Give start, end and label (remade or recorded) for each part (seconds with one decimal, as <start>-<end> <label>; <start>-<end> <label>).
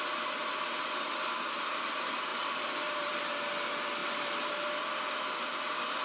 0.0-0.4 recorded; 0.4-1.8 remade; 1.8-2.3 recorded; 2.3-3.3 remade; 3.3-4.0 recorded; 4.0-4.8 remade; 4.8-6.0 recorded